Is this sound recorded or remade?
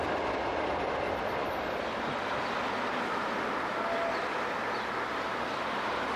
recorded